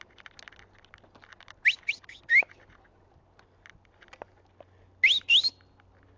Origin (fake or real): real